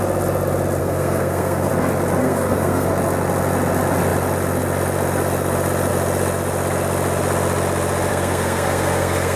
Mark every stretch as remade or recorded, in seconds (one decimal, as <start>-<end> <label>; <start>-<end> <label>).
0.0-0.8 recorded; 0.8-1.7 remade; 1.7-2.2 recorded; 2.2-2.9 remade; 2.9-8.1 recorded; 8.1-9.4 remade